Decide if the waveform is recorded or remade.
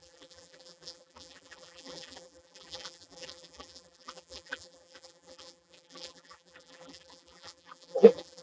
remade